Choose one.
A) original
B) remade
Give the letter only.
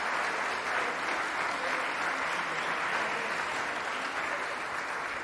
A